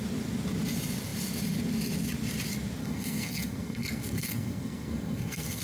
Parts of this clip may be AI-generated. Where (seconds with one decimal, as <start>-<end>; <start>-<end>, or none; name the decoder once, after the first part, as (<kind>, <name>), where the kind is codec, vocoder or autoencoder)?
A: 2.8-5.6 (codec, SNAC)